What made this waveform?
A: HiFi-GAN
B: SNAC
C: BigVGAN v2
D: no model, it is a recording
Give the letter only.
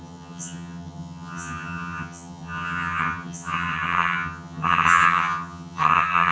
A